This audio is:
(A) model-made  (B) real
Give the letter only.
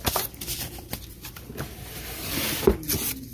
B